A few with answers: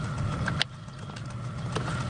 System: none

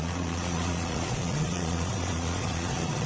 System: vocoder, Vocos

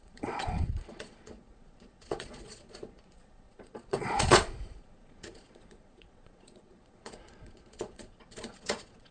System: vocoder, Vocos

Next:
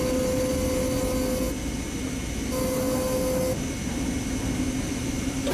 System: none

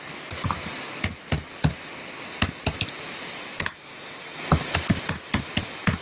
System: none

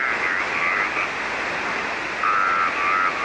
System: none